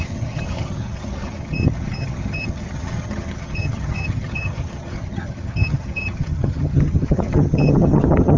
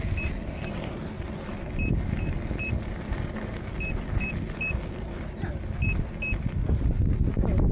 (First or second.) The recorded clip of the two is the second